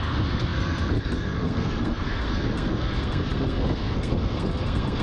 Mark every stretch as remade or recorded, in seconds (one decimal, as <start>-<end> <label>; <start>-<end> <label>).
0.0-5.0 remade